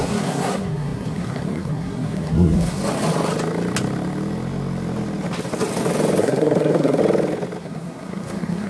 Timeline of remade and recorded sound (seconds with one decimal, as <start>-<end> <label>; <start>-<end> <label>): 0.0-2.8 remade; 2.8-6.2 recorded; 6.2-7.0 remade; 7.0-7.6 recorded; 7.6-8.7 remade